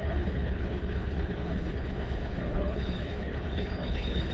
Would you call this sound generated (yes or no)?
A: yes